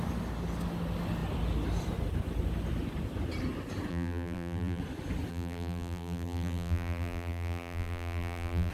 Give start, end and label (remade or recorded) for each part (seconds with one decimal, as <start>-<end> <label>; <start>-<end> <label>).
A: 0.0-3.9 recorded; 3.9-4.8 remade; 4.8-5.3 recorded; 5.3-8.7 remade

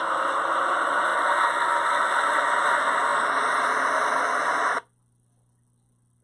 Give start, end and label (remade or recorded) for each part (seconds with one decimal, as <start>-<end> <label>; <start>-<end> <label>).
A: 0.0-6.2 recorded

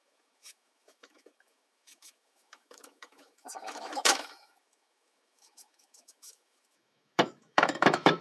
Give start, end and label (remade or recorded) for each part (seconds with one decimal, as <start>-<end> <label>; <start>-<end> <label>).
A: 0.0-8.2 remade

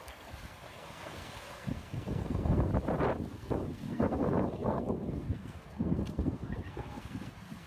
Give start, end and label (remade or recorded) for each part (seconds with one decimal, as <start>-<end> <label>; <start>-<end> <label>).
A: 0.0-2.7 remade; 2.7-3.3 recorded; 3.3-7.7 remade

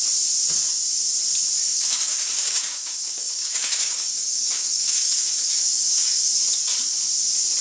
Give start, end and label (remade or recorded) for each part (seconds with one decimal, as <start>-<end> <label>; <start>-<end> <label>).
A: 0.0-1.7 recorded; 1.7-6.3 remade; 6.3-7.6 recorded